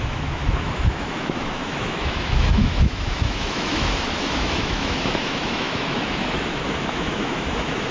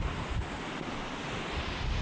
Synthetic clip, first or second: first